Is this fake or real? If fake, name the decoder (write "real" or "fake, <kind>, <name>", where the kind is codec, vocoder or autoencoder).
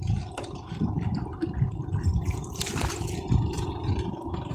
fake, vocoder, BigVGAN v2